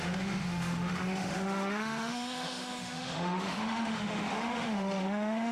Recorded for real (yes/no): no